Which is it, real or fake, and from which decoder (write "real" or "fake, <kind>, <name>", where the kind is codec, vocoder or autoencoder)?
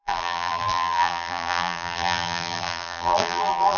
fake, vocoder, BigVGAN v2